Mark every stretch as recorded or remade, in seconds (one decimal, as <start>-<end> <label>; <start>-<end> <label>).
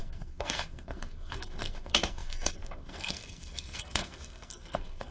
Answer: 0.0-5.1 remade